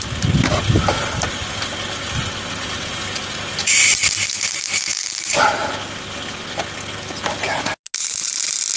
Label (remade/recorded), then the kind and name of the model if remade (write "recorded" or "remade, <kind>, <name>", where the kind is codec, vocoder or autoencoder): recorded